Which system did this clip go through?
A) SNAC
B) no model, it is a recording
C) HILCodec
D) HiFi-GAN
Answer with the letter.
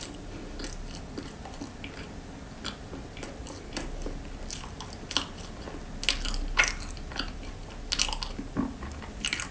B